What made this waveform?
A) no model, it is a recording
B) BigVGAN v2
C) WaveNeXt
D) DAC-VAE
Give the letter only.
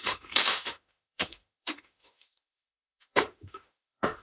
D